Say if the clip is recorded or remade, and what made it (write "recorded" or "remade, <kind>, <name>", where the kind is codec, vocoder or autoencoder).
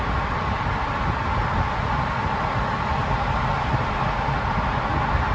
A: recorded